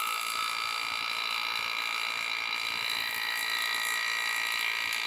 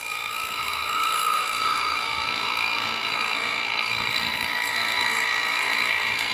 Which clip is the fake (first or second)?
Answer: second